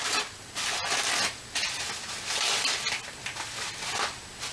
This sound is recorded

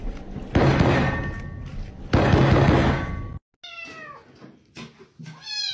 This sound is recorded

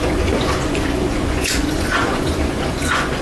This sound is remade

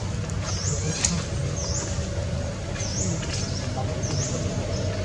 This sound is recorded